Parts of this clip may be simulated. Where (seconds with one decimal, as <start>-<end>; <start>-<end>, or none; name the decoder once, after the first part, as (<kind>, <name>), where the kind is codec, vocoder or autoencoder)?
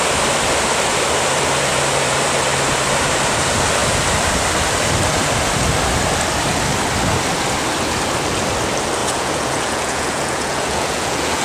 9.0-11.4 (vocoder, Vocos)